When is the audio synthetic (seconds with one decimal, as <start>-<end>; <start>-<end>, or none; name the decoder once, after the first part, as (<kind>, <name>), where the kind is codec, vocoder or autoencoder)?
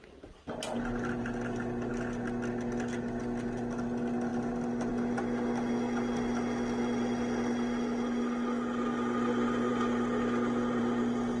none